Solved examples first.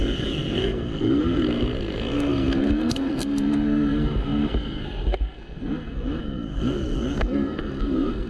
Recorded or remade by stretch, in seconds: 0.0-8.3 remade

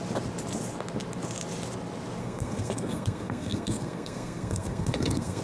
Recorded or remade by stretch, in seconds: 0.0-2.2 recorded; 2.2-5.4 remade